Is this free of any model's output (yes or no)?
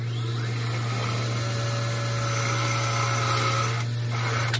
yes